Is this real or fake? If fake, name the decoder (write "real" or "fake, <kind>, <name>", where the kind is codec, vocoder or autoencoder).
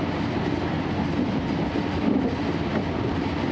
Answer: real